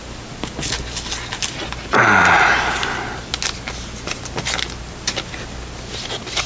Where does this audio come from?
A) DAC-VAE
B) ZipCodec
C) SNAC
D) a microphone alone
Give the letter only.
D